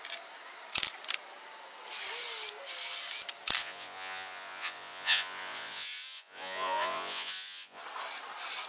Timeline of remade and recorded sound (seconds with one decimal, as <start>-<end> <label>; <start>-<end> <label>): 0.0-3.6 recorded; 3.6-7.8 remade; 7.8-8.7 recorded